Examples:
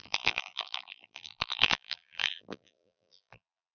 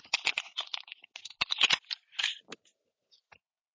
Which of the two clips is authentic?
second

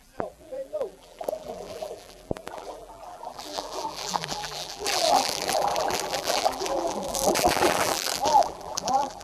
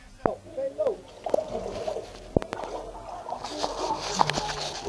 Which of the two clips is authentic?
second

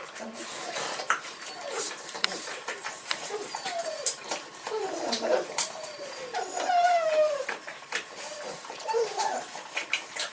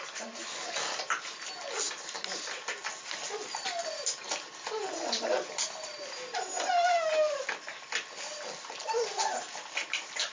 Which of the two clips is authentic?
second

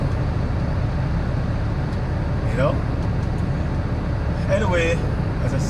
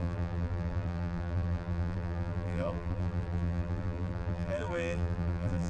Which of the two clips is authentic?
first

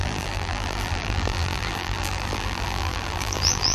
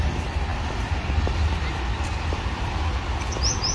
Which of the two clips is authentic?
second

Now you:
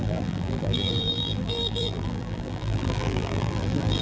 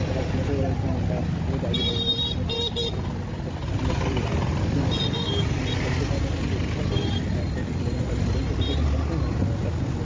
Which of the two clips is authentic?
second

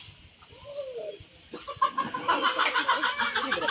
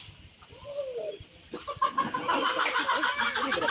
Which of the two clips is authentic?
second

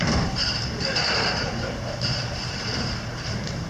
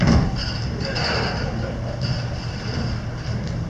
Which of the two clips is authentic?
second